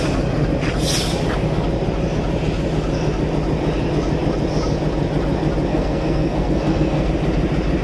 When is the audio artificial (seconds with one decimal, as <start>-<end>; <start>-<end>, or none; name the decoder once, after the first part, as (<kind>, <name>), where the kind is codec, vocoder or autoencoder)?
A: 5.7-7.1 (codec, SNAC)